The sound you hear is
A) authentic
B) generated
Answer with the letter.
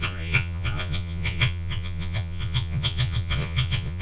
B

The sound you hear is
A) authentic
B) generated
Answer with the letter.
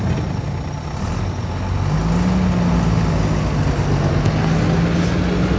A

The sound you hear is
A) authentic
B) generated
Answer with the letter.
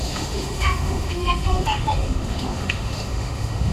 B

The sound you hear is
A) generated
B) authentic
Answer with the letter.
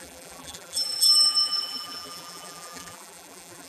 A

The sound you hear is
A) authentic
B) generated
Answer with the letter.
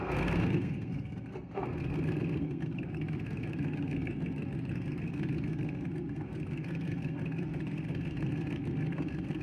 B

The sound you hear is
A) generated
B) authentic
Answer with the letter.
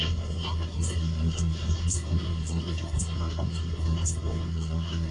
A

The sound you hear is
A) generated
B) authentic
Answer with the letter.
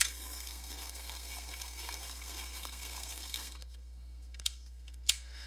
A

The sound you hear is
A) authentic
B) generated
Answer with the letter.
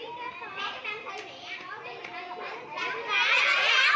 A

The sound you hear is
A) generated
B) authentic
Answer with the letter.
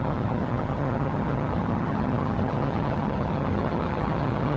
A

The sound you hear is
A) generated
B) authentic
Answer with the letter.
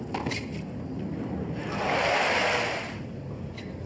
B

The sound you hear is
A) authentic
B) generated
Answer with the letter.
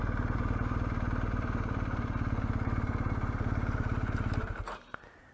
B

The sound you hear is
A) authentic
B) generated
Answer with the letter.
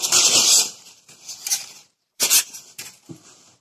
B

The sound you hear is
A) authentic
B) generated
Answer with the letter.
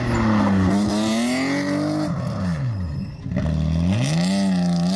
A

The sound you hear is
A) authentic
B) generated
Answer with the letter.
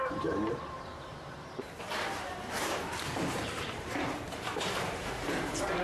B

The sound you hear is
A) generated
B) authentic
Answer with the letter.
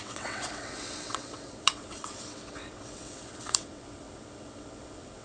A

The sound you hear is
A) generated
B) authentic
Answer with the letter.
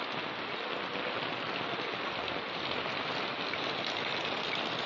B